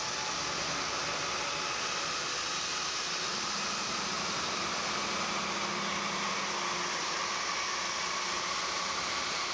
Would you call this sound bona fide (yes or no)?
yes